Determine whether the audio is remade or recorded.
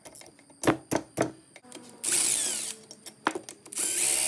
recorded